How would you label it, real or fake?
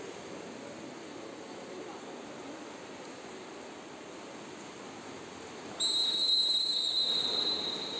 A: real